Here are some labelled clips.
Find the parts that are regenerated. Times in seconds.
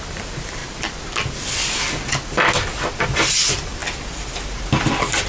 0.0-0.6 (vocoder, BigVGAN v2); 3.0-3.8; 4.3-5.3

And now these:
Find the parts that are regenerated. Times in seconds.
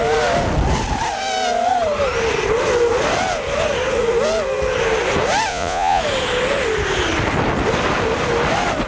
5.5-6.0 (vocoder, Vocos)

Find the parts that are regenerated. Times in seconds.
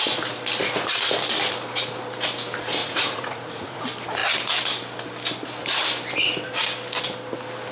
2.8-3.8 (vocoder, Vocos)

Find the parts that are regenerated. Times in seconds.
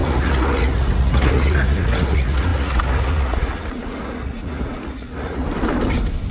0.0-5.4 (vocoder, Vocos)